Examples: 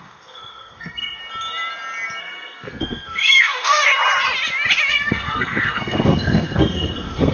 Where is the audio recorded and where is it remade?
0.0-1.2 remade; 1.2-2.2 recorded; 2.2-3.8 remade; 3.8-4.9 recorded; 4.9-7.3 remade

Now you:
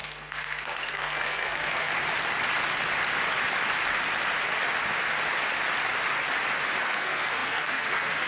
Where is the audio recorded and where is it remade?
0.0-1.9 remade; 1.9-6.8 recorded; 6.8-8.3 remade

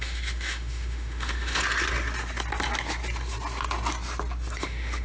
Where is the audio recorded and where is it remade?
0.0-1.6 remade; 1.6-4.6 recorded; 4.6-5.0 remade

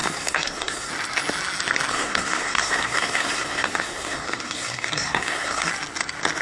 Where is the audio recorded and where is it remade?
0.0-0.9 remade; 0.9-1.9 recorded; 1.9-5.7 remade; 5.7-6.4 recorded

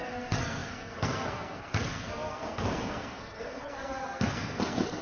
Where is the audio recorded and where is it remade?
0.0-5.0 remade

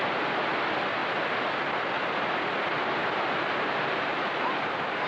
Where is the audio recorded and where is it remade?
0.0-5.1 recorded

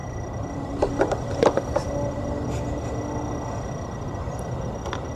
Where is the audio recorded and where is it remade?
0.0-1.0 remade; 1.0-5.2 recorded